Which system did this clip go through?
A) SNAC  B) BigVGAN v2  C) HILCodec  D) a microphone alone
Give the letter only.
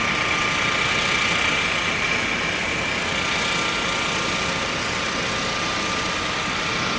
D